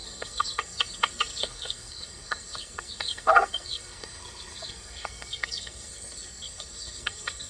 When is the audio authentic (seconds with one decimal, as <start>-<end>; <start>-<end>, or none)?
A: none